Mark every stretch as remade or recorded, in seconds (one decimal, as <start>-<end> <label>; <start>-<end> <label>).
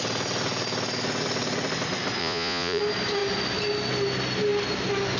0.0-2.2 recorded; 2.2-2.8 remade; 2.8-5.2 recorded